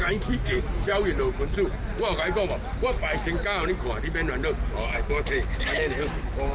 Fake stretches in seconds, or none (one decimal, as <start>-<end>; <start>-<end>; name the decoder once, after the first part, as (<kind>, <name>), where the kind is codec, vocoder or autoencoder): 0.0-0.9 (autoencoder, DAC-VAE); 4.7-6.5